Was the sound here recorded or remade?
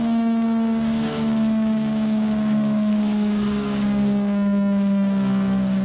remade